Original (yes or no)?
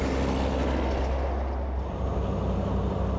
yes